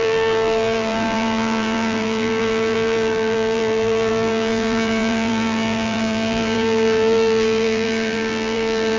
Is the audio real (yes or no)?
no